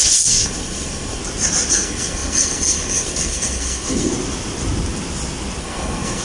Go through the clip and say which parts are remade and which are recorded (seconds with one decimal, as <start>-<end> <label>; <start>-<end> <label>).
0.0-1.2 remade; 1.2-1.7 recorded; 1.7-4.1 remade; 4.1-5.6 recorded; 5.6-6.2 remade